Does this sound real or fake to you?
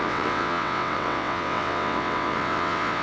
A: fake